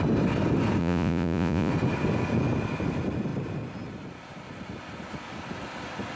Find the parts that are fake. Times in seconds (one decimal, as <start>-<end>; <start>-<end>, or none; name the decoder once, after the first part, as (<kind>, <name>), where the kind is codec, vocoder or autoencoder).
0.8-1.7 (vocoder, Vocos)

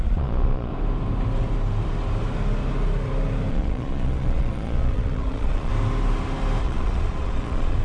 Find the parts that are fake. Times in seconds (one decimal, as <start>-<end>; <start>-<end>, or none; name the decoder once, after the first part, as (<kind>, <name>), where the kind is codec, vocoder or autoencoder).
0.0-0.7 (vocoder, Vocos); 3.5-5.7; 6.6-7.8

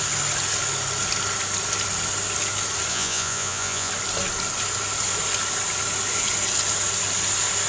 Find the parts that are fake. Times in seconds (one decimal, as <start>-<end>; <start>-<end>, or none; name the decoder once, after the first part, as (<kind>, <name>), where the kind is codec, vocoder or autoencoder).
2.9-3.9 (vocoder, Vocos)